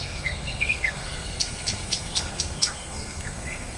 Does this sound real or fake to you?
fake